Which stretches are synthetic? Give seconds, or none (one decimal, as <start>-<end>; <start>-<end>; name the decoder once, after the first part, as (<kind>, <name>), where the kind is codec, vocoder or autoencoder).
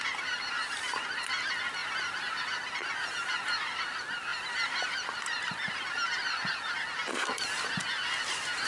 1.8-2.4 (vocoder, BigVGAN v2)